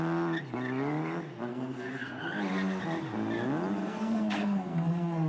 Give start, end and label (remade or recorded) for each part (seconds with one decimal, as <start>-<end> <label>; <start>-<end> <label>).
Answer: 0.0-1.5 recorded; 1.5-2.2 remade; 2.2-3.8 recorded; 3.8-5.3 remade